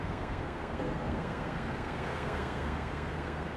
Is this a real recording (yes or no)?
no